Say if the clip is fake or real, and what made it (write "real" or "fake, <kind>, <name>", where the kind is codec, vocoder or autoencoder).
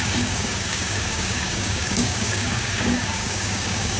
fake, codec, DAC